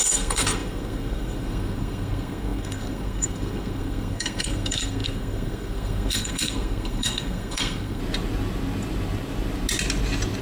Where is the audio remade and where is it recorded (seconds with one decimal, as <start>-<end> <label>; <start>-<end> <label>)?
0.0-8.0 remade; 8.0-10.4 recorded